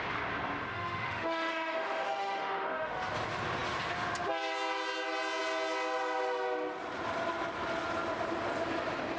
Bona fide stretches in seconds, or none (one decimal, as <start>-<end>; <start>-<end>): 0.0-0.7; 3.1-9.2